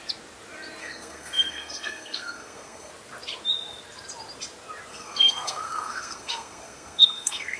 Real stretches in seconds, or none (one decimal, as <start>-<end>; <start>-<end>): 0.0-0.8; 2.9-4.9

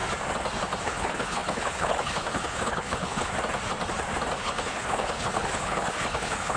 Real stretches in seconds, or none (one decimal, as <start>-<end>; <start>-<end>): 0.0-0.8; 3.3-4.4

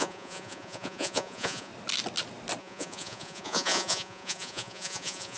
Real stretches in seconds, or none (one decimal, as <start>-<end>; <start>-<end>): 1.7-2.6

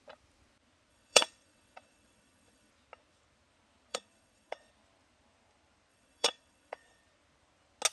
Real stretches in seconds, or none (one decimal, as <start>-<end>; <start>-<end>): 0.0-0.9; 2.7-3.9; 4.7-5.9; 7.0-7.9